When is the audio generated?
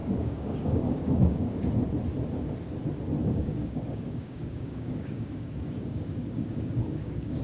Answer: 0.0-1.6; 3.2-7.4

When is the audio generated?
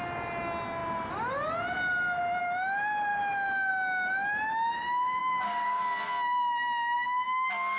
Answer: 5.2-5.8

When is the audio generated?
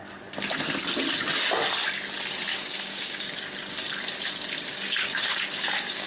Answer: 2.5-3.3; 4.7-6.1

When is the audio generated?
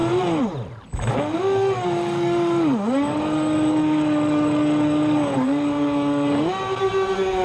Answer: 1.1-7.4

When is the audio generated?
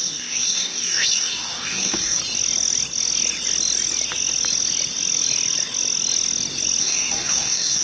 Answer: 0.0-2.2; 6.8-7.8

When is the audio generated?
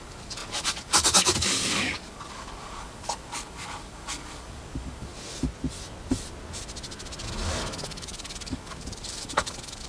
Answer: 0.0-5.1; 7.3-9.9